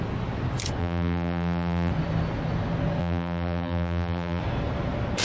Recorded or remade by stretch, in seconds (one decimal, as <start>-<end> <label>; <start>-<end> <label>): 0.0-0.8 recorded; 0.8-1.9 remade; 1.9-3.0 recorded; 3.0-4.4 remade; 4.4-5.2 recorded